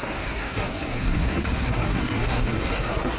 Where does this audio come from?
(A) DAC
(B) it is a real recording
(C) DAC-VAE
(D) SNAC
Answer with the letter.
D